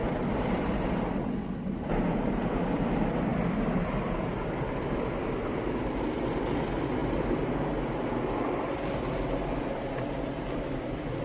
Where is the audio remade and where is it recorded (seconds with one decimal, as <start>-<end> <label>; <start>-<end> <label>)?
0.0-11.2 recorded